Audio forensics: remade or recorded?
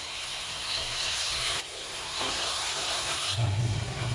remade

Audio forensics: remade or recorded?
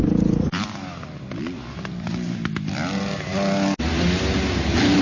recorded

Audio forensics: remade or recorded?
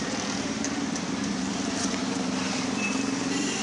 remade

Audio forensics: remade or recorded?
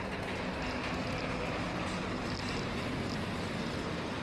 recorded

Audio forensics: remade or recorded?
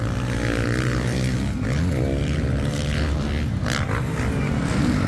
recorded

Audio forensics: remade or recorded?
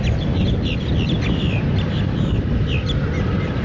recorded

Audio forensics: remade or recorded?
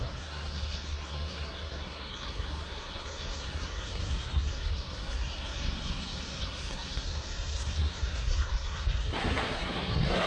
remade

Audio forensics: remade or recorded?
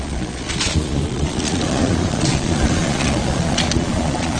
remade